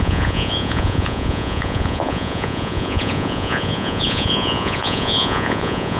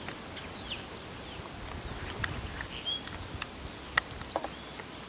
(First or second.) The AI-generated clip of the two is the first